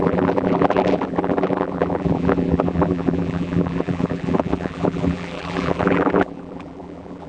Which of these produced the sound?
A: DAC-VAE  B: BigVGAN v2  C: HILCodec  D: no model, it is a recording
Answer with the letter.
B